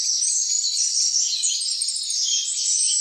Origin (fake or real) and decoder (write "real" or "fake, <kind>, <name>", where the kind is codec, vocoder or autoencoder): real